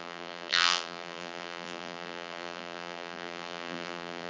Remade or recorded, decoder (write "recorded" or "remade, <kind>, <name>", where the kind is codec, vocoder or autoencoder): remade, vocoder, BigVGAN v2